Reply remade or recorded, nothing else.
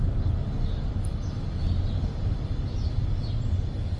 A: recorded